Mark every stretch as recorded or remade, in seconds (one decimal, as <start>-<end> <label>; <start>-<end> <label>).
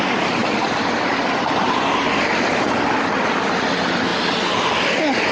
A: 0.0-5.3 recorded